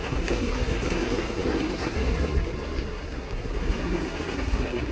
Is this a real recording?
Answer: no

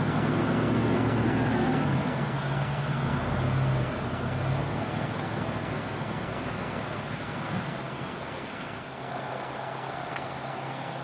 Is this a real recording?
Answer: no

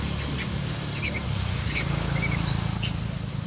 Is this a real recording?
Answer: yes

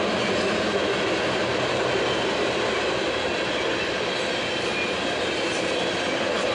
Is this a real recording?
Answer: yes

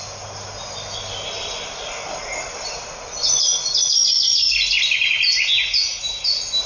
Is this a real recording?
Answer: yes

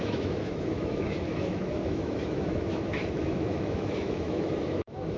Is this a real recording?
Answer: no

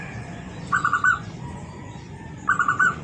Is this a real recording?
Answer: no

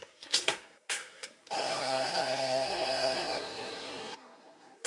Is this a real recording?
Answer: no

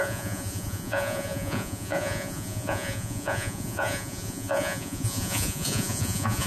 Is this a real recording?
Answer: no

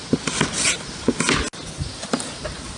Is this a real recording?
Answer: yes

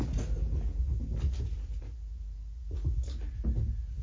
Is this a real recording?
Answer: yes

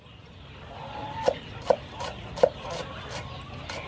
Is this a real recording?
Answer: yes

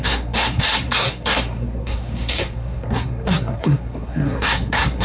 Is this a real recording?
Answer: no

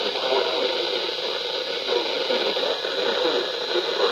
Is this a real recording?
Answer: yes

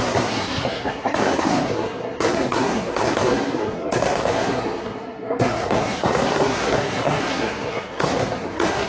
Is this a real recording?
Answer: no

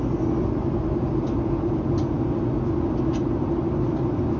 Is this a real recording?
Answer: yes